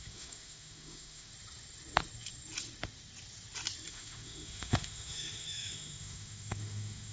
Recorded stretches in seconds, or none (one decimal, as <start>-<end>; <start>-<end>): 1.3-3.9